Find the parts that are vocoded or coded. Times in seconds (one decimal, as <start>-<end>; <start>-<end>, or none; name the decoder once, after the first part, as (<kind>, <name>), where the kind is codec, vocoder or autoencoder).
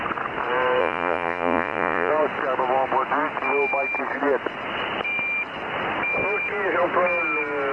0.8-2.1 (vocoder, Vocos)